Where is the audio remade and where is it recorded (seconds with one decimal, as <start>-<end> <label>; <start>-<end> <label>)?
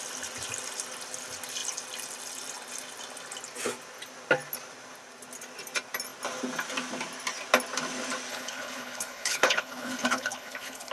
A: 0.0-8.3 recorded; 8.3-10.9 remade